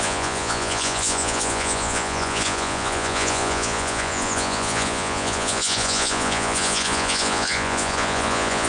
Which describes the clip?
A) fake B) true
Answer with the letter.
A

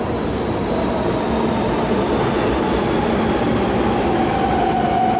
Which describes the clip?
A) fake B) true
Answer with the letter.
B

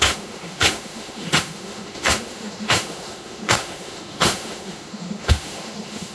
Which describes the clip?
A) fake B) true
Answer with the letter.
A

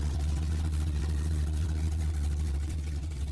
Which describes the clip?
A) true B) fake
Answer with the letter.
B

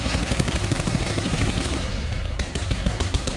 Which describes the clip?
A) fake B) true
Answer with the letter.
A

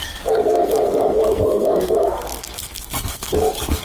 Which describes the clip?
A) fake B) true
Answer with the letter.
A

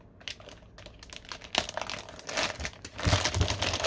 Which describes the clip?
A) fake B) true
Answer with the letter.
B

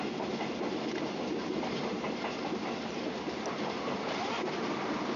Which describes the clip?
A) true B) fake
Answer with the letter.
A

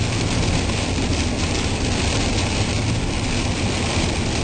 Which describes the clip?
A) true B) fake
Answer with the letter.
A